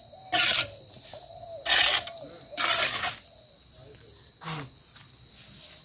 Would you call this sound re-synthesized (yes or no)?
no